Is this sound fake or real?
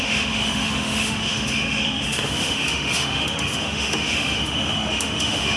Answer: fake